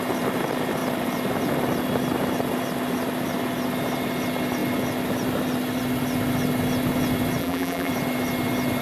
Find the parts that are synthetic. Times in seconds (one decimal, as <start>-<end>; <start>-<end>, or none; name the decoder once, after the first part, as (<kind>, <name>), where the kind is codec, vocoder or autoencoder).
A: 7.4-7.9 (vocoder, BigVGAN v2)